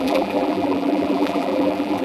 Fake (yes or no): yes